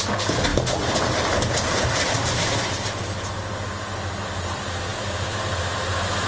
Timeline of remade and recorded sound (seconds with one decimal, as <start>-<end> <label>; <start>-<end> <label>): 0.0-6.3 recorded